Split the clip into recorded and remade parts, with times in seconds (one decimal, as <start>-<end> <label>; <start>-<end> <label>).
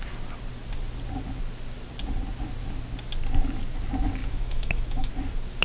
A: 0.0-4.2 recorded; 4.2-5.1 remade; 5.1-5.6 recorded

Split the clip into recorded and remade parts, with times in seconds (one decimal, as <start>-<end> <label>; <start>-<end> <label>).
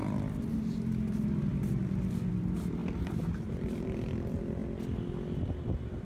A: 0.0-6.0 recorded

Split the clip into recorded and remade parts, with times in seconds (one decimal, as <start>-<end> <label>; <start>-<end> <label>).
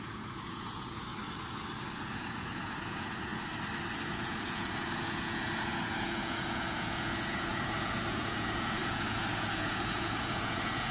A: 0.0-1.1 remade; 1.1-2.1 recorded; 2.1-3.3 remade; 3.3-4.1 recorded; 4.1-10.9 remade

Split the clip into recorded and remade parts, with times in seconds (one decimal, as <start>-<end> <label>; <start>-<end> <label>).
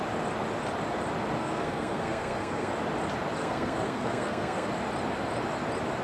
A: 0.0-1.4 recorded; 1.4-2.7 remade; 2.7-3.4 recorded; 3.4-4.7 remade; 4.7-6.0 recorded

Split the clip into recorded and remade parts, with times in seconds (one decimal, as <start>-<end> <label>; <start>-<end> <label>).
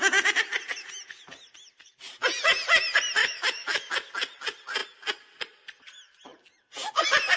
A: 0.0-3.2 recorded; 3.2-3.9 remade; 3.9-7.4 recorded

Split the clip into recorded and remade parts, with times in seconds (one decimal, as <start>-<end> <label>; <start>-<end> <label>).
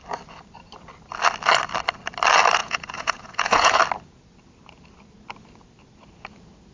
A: 0.0-2.6 recorded; 2.6-3.8 remade; 3.8-6.7 recorded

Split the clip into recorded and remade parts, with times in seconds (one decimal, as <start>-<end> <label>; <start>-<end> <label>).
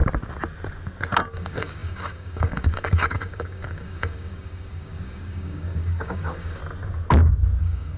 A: 0.0-1.3 recorded; 1.3-6.6 remade; 6.6-7.6 recorded; 7.6-8.0 remade